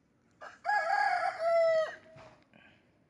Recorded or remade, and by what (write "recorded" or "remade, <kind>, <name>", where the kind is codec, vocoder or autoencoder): recorded